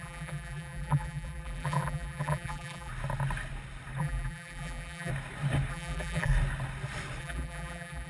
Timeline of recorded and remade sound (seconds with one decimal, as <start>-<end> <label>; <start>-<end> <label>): 0.0-2.9 remade; 2.9-4.0 recorded; 4.0-5.1 remade; 5.1-5.7 recorded; 5.7-6.3 remade; 6.3-7.2 recorded; 7.2-8.1 remade